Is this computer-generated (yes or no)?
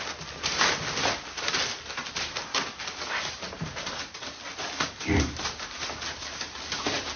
no